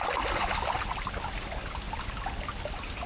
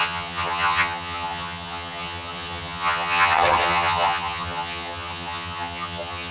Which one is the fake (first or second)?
second